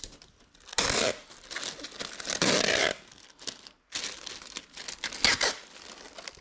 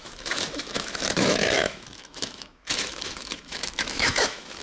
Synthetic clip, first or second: second